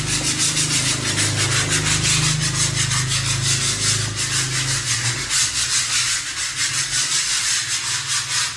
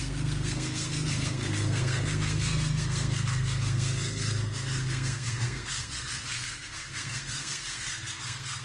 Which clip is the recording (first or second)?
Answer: first